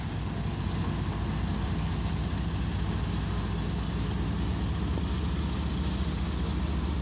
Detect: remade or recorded recorded